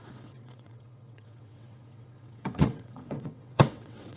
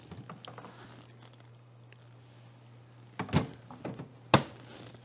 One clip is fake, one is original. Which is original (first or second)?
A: second